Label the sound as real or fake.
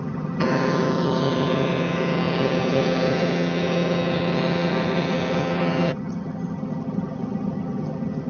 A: fake